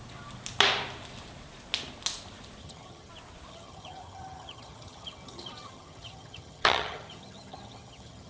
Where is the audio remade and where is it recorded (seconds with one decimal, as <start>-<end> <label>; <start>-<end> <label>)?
0.0-2.6 recorded; 2.6-3.1 remade; 3.1-3.5 recorded; 3.5-8.3 remade